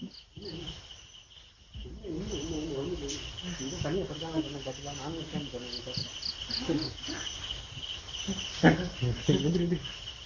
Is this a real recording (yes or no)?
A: yes